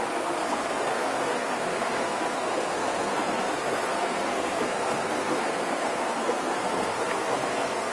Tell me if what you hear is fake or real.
fake